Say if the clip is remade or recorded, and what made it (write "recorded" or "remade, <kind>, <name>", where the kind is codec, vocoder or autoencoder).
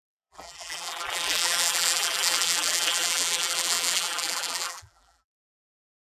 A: remade, vocoder, BigVGAN v2